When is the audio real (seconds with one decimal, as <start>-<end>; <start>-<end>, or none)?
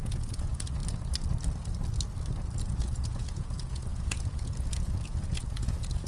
0.8-2.6